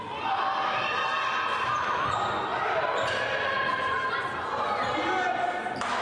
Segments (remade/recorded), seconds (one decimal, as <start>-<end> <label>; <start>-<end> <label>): 0.0-6.0 recorded